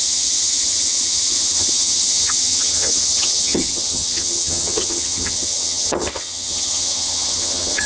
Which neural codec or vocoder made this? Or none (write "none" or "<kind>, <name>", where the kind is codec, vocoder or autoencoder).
vocoder, HiFi-GAN